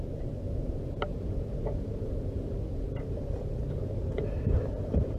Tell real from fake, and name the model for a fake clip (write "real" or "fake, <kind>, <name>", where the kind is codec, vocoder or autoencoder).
fake, vocoder, BigVGAN v2